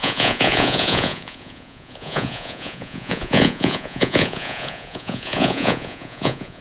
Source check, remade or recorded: remade